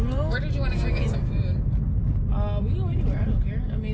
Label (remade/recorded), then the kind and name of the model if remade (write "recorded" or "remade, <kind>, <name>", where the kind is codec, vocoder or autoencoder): recorded